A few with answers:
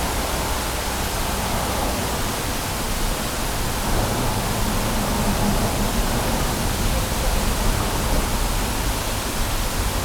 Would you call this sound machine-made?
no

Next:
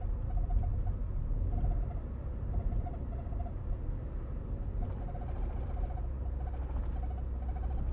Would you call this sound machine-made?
no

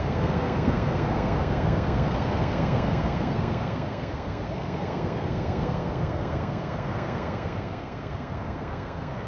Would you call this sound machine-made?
yes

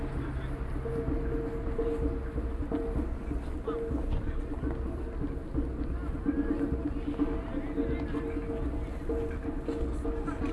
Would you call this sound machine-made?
no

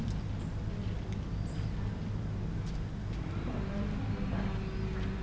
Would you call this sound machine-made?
no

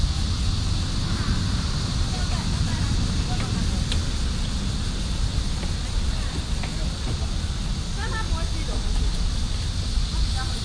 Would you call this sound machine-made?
no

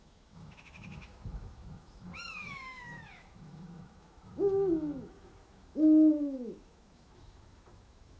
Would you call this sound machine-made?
yes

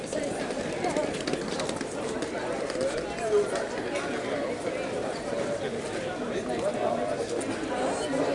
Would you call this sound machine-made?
no